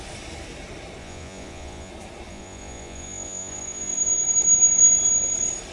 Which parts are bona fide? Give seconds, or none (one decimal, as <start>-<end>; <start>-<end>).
0.0-1.0; 1.9-2.3; 4.2-5.7